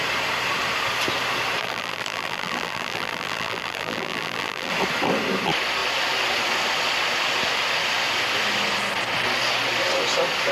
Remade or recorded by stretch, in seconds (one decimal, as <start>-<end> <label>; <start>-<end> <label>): 0.0-1.6 recorded; 1.6-4.7 remade; 4.7-10.5 recorded